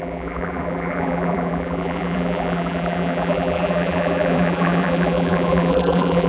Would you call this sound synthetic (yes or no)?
yes